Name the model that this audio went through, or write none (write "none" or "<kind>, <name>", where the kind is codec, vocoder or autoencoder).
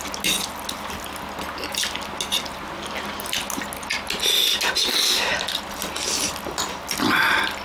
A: none